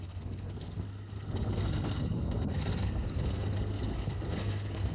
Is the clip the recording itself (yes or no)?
no